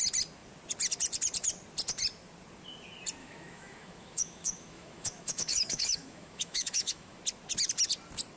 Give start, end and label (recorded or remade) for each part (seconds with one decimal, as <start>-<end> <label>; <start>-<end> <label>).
0.0-3.2 recorded; 3.2-7.2 remade; 7.2-8.4 recorded